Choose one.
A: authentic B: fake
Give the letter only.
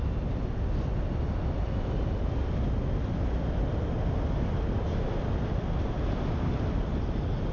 A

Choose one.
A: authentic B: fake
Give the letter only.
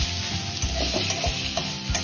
A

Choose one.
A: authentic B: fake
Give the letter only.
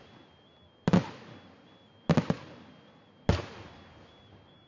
A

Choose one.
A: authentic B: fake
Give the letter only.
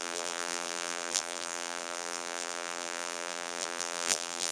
B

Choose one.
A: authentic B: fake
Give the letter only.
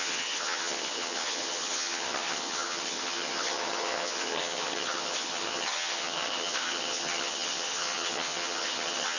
B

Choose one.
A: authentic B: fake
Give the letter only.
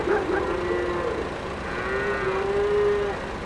A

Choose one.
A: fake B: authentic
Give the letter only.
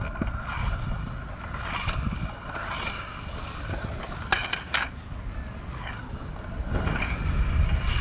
B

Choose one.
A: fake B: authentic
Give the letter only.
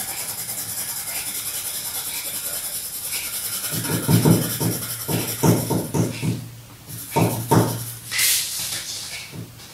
B